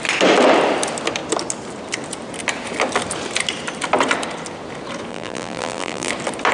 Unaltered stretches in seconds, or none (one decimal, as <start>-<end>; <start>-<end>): 0.0-5.1; 6.1-6.5